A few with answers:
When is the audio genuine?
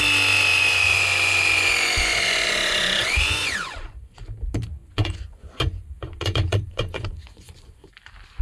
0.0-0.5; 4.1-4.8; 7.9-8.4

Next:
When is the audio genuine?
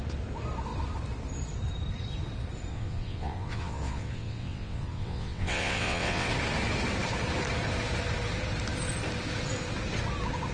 0.0-2.7; 6.3-10.5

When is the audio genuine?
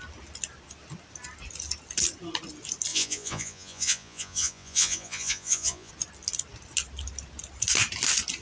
0.0-2.9; 5.9-8.4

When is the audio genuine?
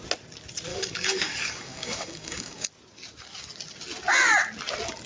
0.0-0.7; 2.7-5.1